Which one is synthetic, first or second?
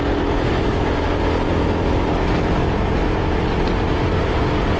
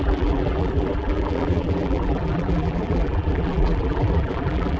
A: second